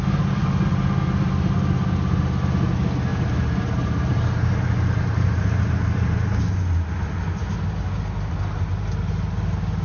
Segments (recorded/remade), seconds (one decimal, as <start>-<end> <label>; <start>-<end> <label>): 0.0-3.1 recorded; 3.1-6.4 remade; 6.4-9.8 recorded